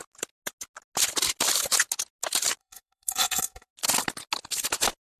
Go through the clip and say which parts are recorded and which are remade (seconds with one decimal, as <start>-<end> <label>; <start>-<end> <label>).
0.0-2.6 recorded; 2.6-3.7 remade; 3.7-5.2 recorded